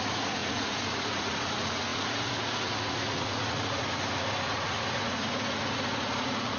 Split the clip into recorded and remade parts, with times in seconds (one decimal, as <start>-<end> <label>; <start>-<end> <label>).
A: 0.0-6.6 remade